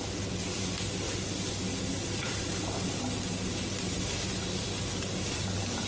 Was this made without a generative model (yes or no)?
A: yes